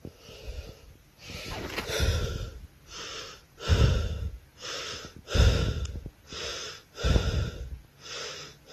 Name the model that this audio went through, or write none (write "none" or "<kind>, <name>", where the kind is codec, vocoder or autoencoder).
none